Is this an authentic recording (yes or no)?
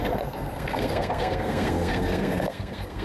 no